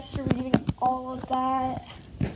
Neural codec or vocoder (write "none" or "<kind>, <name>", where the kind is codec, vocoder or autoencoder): none